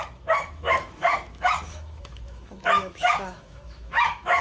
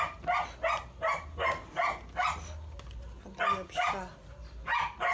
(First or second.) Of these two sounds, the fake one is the first